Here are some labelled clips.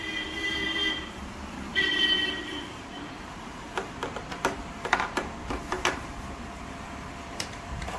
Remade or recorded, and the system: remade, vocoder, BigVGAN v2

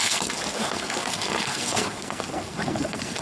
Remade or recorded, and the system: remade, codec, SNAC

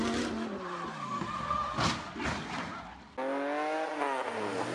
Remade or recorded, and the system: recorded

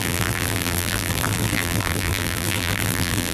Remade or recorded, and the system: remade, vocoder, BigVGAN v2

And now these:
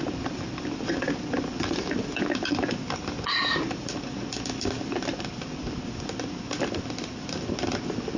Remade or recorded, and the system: recorded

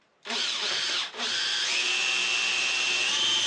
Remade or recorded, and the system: recorded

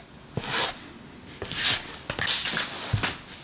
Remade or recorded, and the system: recorded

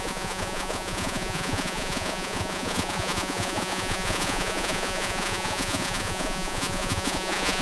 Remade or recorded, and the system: remade, vocoder, Vocos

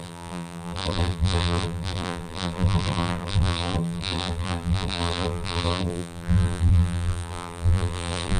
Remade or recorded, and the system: remade, vocoder, BigVGAN v2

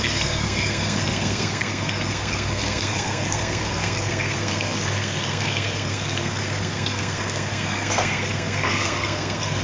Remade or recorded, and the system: remade, codec, SNAC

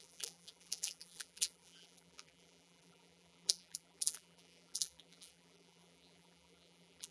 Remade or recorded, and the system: remade, vocoder, BigVGAN v2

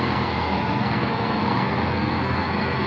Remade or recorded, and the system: remade, codec, SNAC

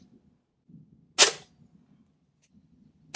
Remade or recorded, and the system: recorded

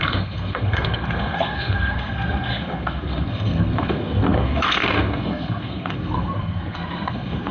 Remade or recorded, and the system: remade, codec, SNAC